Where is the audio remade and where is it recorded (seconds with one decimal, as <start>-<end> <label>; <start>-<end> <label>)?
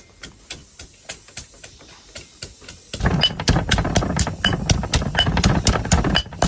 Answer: 0.0-6.5 recorded